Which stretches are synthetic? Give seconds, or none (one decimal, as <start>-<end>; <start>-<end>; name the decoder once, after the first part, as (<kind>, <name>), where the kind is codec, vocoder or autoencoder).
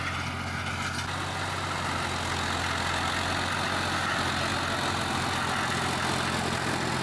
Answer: none